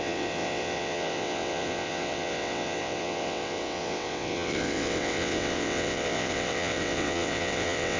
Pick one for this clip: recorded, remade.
remade